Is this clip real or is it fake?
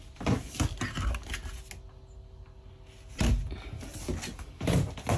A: real